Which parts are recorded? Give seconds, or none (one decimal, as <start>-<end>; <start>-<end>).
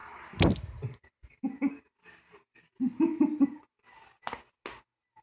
0.0-5.2